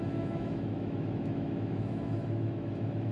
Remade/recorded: remade